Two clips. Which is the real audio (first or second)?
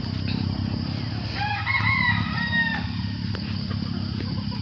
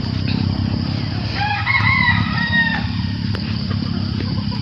first